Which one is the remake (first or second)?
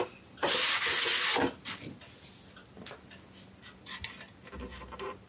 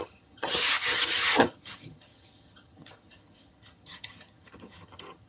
second